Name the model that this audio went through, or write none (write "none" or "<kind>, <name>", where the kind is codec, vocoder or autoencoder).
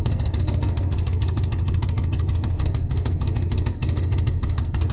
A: codec, SNAC